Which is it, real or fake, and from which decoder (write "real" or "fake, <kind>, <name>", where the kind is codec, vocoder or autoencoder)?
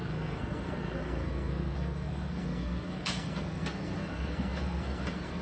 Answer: fake, codec, SNAC